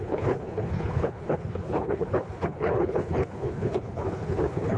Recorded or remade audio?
remade